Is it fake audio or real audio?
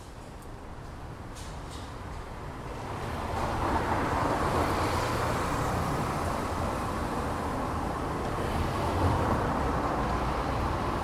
fake